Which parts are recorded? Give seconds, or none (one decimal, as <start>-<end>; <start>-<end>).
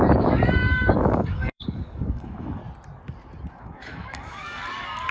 2.6-3.6